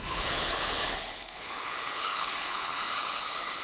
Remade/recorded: remade